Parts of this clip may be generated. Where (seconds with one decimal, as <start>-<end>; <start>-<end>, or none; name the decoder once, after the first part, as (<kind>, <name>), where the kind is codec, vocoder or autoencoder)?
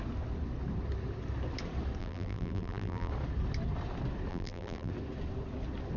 2.0-3.1 (vocoder, BigVGAN v2); 4.3-4.9